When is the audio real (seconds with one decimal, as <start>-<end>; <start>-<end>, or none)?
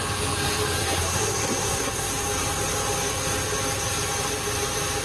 0.0-0.8; 2.1-5.0